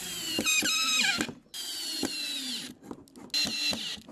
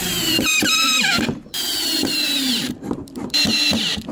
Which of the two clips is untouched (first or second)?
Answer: first